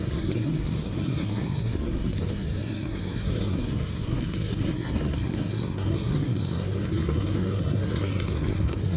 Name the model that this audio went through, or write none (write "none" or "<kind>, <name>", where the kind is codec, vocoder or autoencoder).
codec, SNAC